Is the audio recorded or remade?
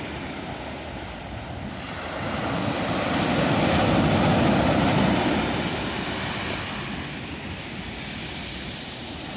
recorded